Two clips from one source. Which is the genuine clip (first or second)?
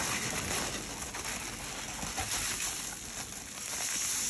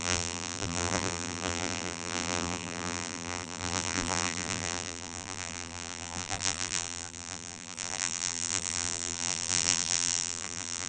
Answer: first